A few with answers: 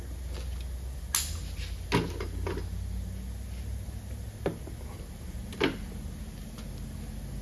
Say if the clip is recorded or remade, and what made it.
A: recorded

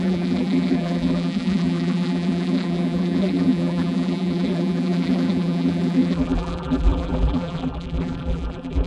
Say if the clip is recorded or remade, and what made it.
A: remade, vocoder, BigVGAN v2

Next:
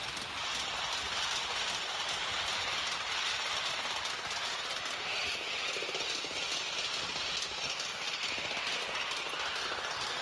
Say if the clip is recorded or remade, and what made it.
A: recorded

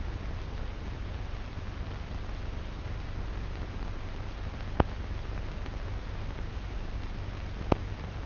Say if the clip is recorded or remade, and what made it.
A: recorded